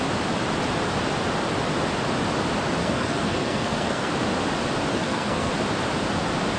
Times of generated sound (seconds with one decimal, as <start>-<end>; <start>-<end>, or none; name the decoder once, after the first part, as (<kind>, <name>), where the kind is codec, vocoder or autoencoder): 2.8-4.1 (codec, SNAC); 4.9-5.5